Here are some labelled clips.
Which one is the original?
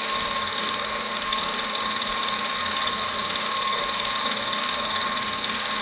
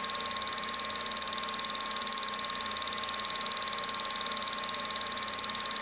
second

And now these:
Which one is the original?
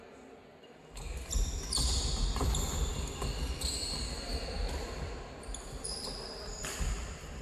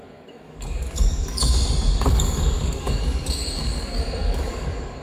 first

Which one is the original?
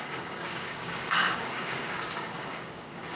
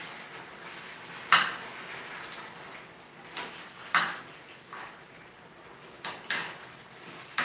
second